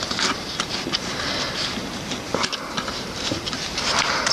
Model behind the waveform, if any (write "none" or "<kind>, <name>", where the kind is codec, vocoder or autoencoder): vocoder, BigVGAN v2